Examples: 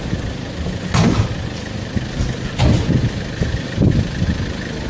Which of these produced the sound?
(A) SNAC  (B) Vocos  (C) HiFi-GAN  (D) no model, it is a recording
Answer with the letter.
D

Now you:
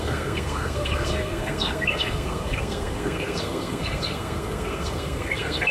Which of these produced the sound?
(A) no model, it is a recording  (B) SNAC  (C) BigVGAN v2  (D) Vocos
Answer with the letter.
B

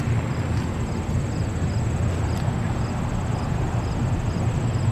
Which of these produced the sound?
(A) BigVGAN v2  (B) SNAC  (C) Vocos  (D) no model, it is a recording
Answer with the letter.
D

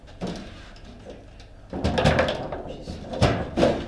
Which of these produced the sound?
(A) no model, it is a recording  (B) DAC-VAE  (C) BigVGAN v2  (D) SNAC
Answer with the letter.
A